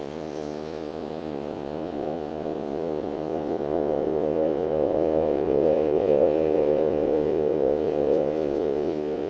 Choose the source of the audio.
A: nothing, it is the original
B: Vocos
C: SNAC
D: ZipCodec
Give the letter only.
B